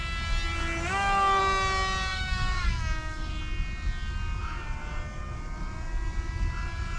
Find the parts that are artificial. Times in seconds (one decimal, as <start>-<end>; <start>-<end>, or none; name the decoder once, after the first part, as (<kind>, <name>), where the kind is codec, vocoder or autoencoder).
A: 2.1-3.4 (codec, DAC)